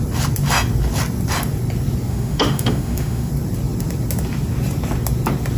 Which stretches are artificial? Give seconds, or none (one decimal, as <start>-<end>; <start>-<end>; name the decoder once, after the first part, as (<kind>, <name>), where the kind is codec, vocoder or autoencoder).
2.1-3.3 (autoencoder, DAC-VAE)